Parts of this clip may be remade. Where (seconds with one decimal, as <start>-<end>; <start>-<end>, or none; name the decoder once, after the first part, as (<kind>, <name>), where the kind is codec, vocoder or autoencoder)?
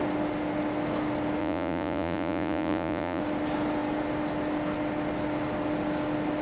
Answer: 1.4-3.2 (vocoder, Vocos)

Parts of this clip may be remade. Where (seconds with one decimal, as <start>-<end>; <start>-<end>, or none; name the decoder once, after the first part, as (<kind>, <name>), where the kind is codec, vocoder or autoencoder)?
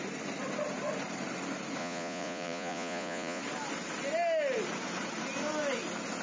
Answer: 1.8-3.4 (vocoder, Vocos)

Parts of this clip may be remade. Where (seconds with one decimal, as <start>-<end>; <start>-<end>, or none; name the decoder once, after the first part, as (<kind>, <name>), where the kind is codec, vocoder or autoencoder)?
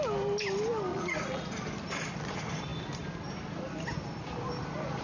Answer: 0.9-1.5 (vocoder, Vocos)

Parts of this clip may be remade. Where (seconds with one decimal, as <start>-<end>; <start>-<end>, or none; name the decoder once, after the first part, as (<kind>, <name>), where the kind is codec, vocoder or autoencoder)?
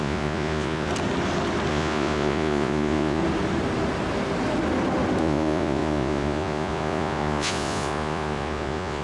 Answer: 0.0-0.9 (vocoder, Vocos); 1.7-3.2; 5.2-9.0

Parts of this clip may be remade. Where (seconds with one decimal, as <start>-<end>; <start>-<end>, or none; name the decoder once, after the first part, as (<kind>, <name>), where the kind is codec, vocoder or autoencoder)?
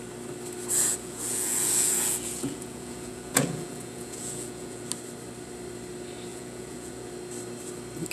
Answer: 0.9-4.8 (vocoder, Vocos); 6.3-7.1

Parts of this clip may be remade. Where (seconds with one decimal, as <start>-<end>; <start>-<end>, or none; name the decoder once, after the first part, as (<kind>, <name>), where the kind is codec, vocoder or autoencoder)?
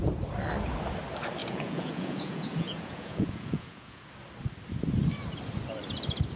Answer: 1.4-4.0 (vocoder, Vocos)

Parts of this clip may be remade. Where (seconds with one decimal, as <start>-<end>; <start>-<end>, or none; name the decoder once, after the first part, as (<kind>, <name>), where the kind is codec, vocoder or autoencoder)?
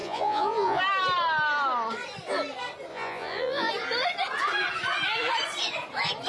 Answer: 0.0-0.8 (vocoder, Vocos); 2.9-3.7